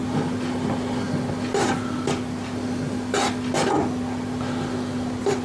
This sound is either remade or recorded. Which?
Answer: recorded